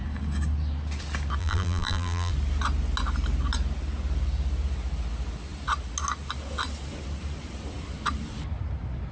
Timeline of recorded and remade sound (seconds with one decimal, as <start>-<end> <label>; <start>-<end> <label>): 0.0-1.4 recorded; 1.4-2.3 remade; 2.3-9.1 recorded

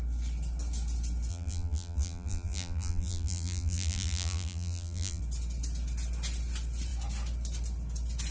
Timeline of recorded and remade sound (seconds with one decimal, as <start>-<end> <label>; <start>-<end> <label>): 0.0-1.3 recorded; 1.3-5.2 remade; 5.2-8.3 recorded

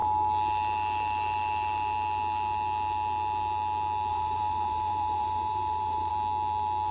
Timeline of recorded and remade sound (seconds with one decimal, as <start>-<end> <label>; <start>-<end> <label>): 0.0-4.1 recorded; 4.1-6.1 remade; 6.1-6.9 recorded

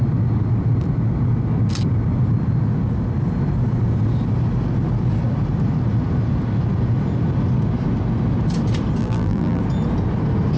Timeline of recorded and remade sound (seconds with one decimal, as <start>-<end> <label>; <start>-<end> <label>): 0.0-9.0 recorded; 9.0-9.6 remade; 9.6-10.6 recorded

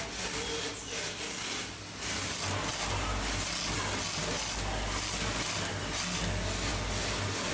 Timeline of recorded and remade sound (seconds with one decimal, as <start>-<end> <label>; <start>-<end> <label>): 0.0-7.5 recorded